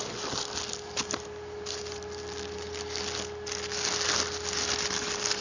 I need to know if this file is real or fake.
real